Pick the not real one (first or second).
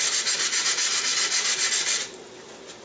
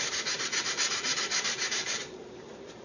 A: second